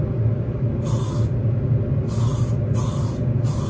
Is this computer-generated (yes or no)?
no